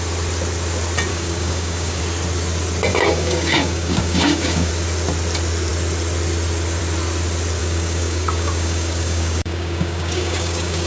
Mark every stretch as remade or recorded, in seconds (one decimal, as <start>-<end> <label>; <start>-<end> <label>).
0.0-1.1 recorded; 1.1-2.0 remade; 2.0-2.9 recorded; 2.9-4.7 remade; 4.7-7.6 recorded; 7.6-10.9 remade